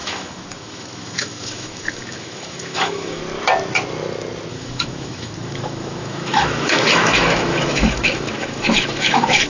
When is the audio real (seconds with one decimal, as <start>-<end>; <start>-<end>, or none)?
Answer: 3.2-4.5

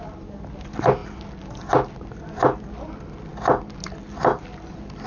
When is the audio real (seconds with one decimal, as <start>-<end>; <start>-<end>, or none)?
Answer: 0.0-5.1

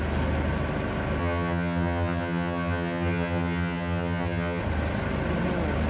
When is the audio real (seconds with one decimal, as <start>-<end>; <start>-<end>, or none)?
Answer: 0.0-1.2; 4.6-5.9

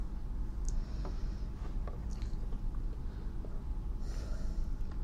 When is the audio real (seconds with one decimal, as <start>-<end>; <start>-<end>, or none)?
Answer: 0.0-2.0; 2.6-5.0

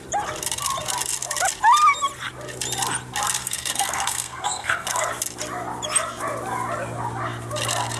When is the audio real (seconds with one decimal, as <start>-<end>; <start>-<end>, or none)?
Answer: 0.0-3.4; 5.1-8.0

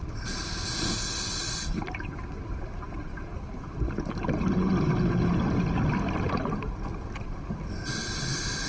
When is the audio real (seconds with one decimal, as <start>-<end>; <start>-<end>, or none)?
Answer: 0.0-8.7

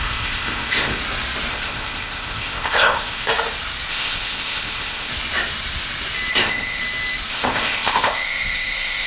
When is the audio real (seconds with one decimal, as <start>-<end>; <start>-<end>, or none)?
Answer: 1.0-1.5; 3.3-3.9; 5.1-6.3; 6.8-7.3